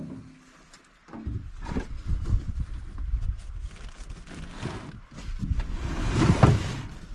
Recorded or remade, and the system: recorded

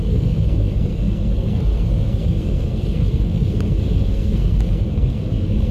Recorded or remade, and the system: remade, codec, SNAC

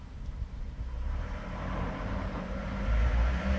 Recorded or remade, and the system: remade, vocoder, BigVGAN v2